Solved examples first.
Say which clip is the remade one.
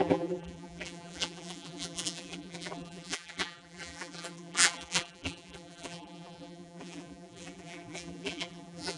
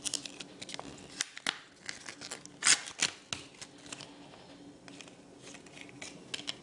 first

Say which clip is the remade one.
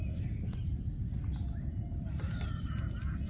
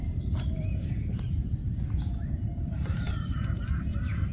second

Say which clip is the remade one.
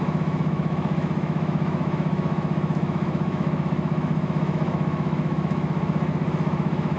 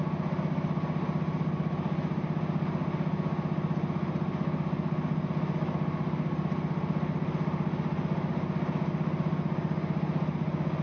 first